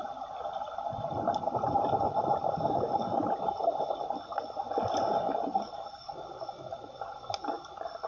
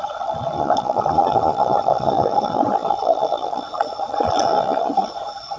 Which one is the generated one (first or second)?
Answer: second